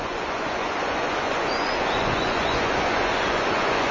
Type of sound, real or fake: fake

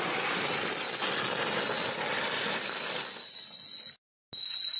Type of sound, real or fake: real